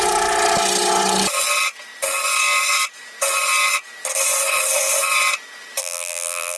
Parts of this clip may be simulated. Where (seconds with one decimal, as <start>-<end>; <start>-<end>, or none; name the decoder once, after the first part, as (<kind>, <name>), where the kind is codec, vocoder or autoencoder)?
5.8-6.6 (vocoder, BigVGAN v2)